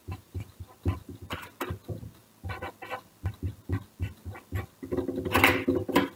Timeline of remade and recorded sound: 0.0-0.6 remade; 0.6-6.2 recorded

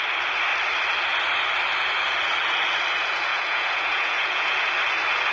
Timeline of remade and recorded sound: 0.0-3.3 recorded; 3.3-4.7 remade; 4.7-5.3 recorded

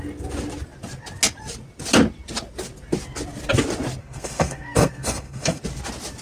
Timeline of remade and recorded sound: 0.0-4.0 recorded; 4.0-5.6 remade; 5.6-6.2 recorded